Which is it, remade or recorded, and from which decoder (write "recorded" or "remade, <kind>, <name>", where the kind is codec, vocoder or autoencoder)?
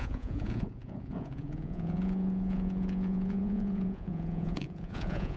remade, vocoder, Vocos